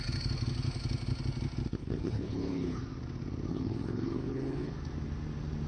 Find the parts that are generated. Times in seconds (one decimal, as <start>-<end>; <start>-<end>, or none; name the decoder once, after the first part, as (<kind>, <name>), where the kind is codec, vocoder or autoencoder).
1.8-2.8 (codec, HILCodec); 3.5-4.7